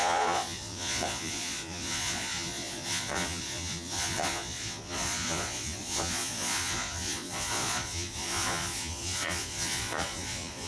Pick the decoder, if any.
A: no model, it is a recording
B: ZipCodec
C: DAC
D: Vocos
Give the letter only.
D